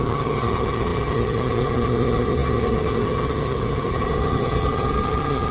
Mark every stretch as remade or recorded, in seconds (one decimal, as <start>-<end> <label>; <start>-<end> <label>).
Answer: 0.0-5.5 remade